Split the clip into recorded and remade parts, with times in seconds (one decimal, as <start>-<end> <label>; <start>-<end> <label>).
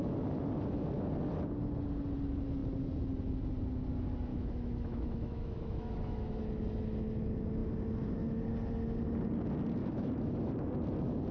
0.0-4.3 recorded; 4.3-6.4 remade; 6.4-9.8 recorded; 9.8-10.4 remade; 10.4-11.3 recorded